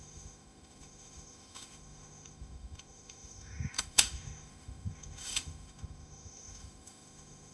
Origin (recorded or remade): remade